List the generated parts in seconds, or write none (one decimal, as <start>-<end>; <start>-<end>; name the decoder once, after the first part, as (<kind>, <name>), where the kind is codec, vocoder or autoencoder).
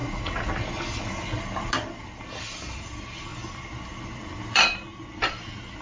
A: 0.0-0.5 (vocoder, Vocos)